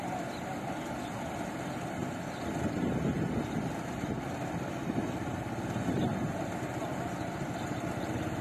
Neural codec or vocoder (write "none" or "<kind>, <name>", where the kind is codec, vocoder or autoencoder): none